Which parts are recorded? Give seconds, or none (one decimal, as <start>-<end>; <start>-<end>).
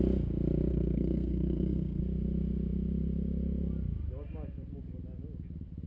0.0-0.7; 2.0-5.9